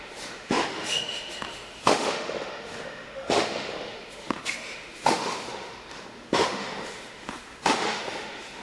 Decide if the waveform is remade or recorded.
remade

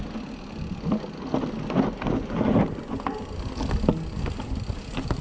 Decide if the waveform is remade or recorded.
recorded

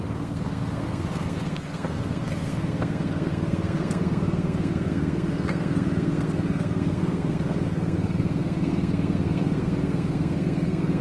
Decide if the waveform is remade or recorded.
remade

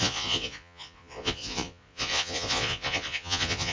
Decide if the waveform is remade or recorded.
remade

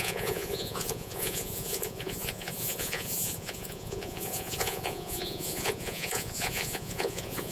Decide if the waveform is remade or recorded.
remade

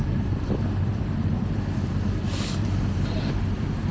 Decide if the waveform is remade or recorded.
remade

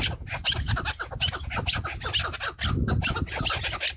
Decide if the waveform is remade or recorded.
recorded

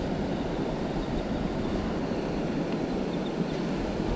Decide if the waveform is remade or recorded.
recorded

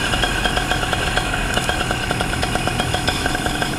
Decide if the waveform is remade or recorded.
remade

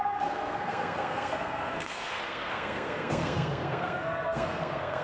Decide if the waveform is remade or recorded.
remade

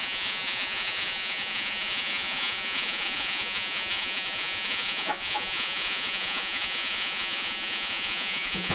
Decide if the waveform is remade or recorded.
remade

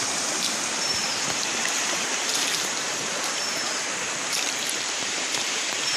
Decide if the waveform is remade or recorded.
remade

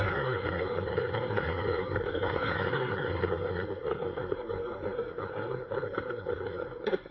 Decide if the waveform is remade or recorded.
remade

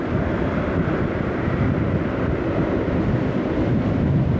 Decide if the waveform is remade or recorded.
recorded